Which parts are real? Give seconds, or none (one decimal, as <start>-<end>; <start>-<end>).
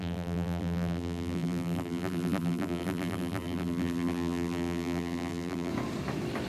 5.7-6.5